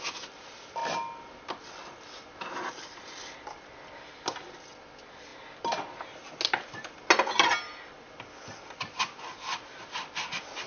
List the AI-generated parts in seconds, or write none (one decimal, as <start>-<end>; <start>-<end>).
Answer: none